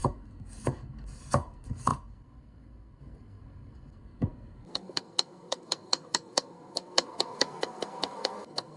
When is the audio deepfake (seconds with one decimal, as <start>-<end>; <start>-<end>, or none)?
0.0-8.8